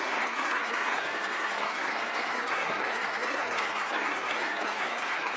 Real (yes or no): no